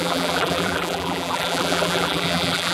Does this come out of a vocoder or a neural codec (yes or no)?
yes